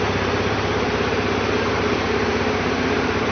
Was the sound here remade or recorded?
remade